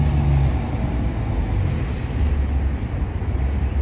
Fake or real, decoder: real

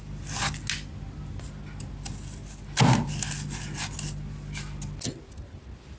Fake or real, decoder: real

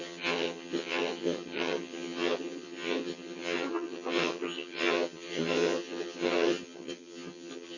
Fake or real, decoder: fake, vocoder, HiFi-GAN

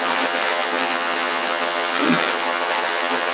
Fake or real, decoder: fake, vocoder, HiFi-GAN